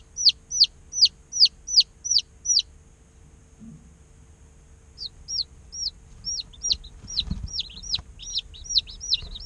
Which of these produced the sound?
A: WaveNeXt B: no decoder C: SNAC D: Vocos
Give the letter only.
B